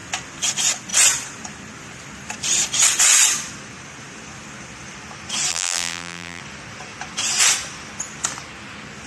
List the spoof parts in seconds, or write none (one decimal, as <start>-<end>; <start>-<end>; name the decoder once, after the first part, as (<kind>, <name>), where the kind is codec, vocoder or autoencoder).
5.5-6.4 (vocoder, BigVGAN v2)